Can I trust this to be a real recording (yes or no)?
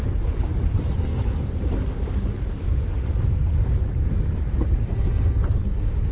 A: yes